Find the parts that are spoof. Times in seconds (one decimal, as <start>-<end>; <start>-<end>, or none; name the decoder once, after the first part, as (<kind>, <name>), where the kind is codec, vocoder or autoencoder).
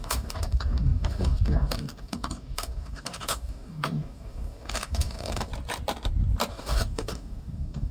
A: 0.0-5.5 (codec, DAC); 6.5-7.9